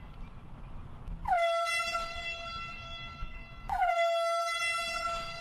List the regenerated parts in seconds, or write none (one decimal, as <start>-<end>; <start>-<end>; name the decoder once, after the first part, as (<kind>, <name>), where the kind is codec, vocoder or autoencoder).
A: 1.9-3.4 (autoencoder, DAC-VAE); 3.8-4.6